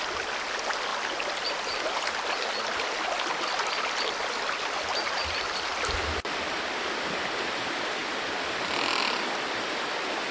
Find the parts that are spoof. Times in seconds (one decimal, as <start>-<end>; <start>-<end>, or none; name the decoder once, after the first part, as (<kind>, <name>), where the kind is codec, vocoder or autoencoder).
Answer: none